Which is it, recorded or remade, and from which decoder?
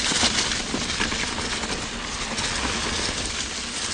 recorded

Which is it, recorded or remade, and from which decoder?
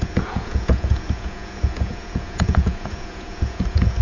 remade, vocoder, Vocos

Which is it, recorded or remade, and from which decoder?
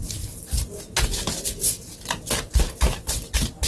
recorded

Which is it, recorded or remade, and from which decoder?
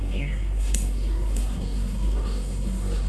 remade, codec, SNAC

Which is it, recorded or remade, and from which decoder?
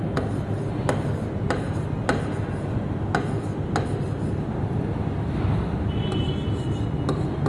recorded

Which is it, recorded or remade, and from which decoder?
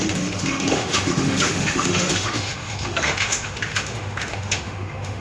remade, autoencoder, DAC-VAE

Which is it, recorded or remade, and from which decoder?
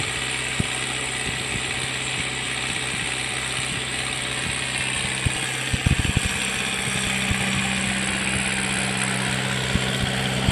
recorded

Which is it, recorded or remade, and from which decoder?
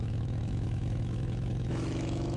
remade, autoencoder, DAC-VAE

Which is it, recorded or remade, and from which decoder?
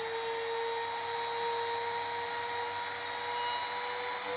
recorded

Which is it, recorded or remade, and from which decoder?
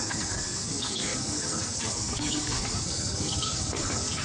remade, codec, SNAC